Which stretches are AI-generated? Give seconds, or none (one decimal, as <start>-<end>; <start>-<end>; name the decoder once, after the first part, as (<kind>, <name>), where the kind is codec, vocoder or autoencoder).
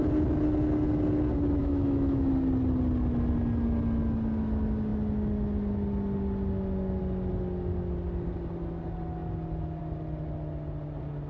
1.6-2.3 (autoencoder, DAC-VAE)